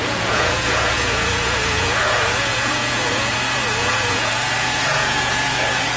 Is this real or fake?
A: fake